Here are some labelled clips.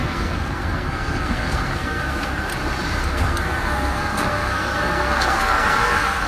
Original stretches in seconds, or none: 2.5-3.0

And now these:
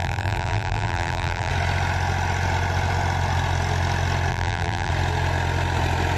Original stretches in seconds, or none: 1.5-4.3; 4.9-6.2

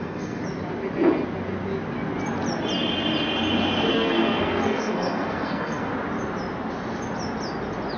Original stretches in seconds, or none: 0.4-3.9; 5.9-8.0

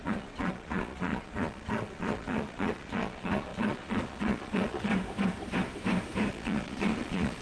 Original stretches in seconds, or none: 4.9-6.3

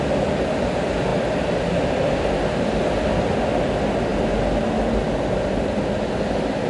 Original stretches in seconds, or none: 0.0-6.7

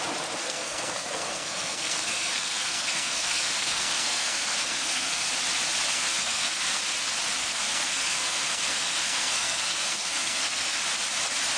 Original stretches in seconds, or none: 0.0-0.4; 5.3-5.9; 6.8-7.4; 10.8-11.6

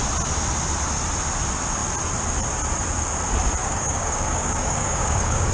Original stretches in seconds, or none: 0.0-3.6

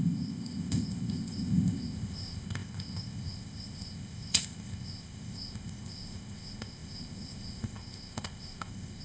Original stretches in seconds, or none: none